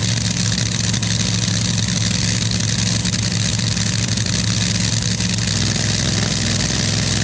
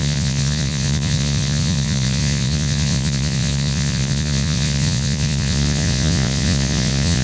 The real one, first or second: first